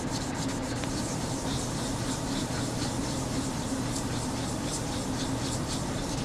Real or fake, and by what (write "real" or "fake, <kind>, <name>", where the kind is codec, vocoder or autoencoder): fake, vocoder, BigVGAN v2